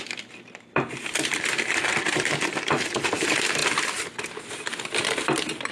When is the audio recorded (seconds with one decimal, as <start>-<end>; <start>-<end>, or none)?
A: 3.6-5.7